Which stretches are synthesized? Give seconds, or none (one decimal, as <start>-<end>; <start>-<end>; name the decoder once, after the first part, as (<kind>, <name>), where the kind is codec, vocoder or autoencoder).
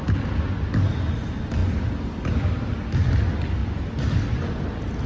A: none